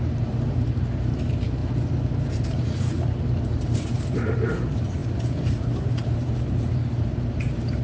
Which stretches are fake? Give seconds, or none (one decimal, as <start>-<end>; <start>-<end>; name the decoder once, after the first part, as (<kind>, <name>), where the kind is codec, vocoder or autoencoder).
0.0-1.6 (vocoder, BigVGAN v2); 2.2-7.8